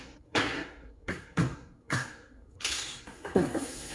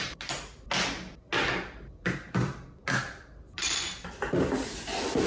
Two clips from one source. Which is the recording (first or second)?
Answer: second